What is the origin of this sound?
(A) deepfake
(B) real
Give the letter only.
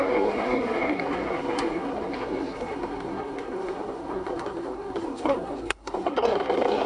A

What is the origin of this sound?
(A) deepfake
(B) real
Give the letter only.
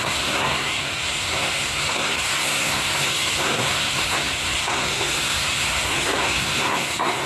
A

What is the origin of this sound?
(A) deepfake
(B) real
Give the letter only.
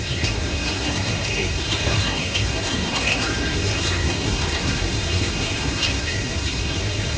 A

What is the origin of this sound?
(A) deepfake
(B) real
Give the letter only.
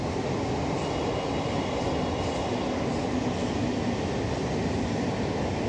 B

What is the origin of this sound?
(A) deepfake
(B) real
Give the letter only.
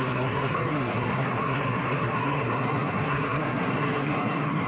A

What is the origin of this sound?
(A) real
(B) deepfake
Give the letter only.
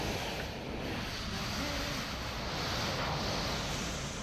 A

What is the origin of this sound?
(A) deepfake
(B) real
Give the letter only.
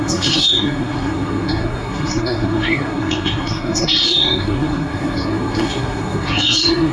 A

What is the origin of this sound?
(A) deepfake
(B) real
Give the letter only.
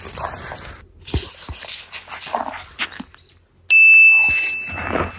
B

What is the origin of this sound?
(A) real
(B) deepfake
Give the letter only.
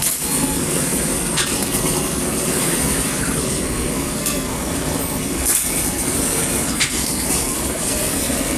B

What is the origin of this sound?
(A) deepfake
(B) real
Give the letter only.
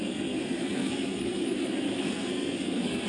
A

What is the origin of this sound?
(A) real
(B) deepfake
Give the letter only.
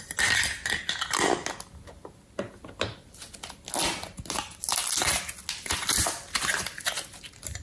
A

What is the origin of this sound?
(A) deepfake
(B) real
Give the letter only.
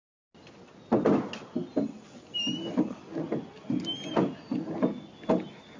B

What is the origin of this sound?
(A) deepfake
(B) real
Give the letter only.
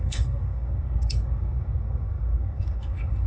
A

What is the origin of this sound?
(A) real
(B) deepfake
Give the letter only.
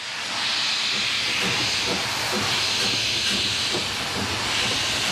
A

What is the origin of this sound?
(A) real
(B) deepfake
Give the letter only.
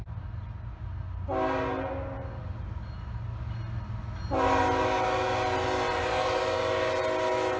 A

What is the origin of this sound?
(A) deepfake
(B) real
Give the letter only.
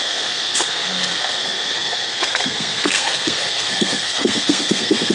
A